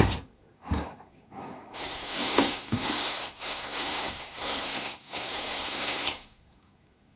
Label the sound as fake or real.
fake